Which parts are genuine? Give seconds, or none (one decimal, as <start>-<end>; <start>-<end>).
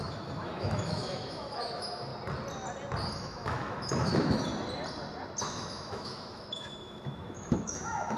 2.1-3.1; 4.5-5.4